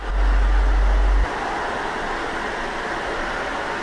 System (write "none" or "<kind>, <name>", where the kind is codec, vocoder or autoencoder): none